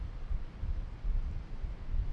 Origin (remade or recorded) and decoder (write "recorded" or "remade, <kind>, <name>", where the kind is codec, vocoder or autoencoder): recorded